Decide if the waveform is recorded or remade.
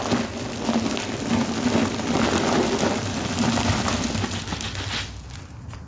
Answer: recorded